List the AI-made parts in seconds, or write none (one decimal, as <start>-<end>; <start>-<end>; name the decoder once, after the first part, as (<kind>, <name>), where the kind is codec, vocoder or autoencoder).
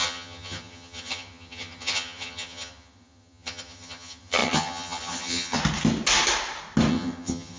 0.0-5.6 (vocoder, HiFi-GAN); 6.9-7.6